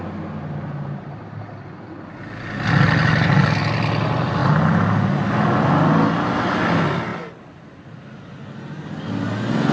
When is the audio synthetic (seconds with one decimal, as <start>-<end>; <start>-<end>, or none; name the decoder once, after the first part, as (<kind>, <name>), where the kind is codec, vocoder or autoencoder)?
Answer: 7.1-8.3 (vocoder, BigVGAN v2)